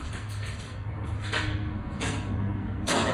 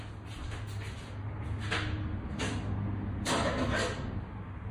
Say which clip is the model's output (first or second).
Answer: first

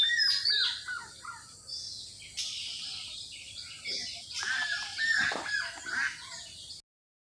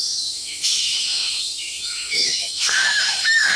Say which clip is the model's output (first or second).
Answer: second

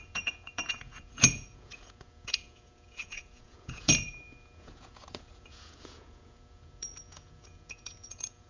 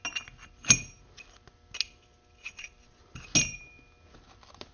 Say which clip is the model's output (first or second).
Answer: first